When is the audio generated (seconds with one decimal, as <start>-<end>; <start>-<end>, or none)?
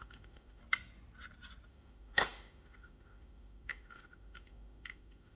0.0-0.6; 1.7-5.3